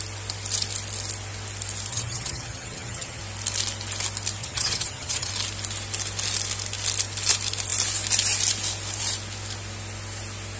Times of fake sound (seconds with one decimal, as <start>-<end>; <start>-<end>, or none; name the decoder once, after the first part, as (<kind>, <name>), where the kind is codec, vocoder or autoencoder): 1.9-3.2 (vocoder, HiFi-GAN); 4.4-5.3